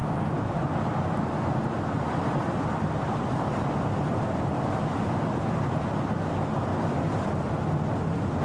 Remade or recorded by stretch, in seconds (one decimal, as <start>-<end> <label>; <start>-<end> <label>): 0.0-4.2 remade; 4.2-6.7 recorded; 6.7-7.3 remade; 7.3-8.4 recorded